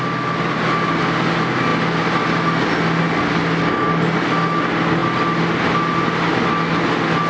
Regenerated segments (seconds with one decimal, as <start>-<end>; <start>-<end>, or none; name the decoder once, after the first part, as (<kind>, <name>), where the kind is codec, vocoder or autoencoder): none